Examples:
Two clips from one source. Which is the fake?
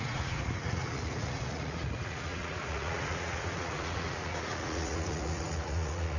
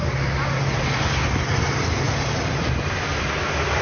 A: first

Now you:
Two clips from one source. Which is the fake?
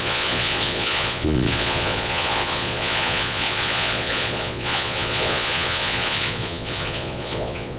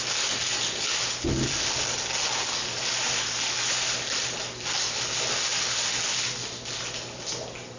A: first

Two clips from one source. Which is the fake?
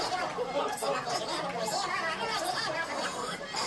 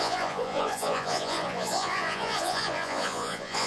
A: second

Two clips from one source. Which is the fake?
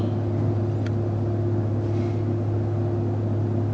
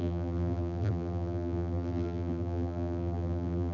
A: second